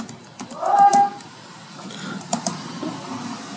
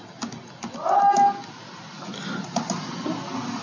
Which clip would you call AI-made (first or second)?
first